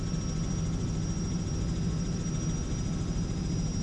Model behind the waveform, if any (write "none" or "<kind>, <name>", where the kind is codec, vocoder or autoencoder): none